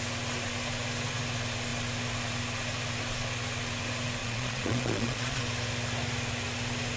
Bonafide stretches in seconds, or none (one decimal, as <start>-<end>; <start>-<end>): 0.0-4.2; 5.4-7.0